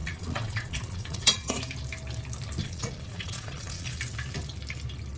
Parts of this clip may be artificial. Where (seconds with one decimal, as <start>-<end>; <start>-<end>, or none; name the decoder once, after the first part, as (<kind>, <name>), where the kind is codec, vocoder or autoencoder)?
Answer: 0.0-1.5 (vocoder, Vocos); 2.6-4.0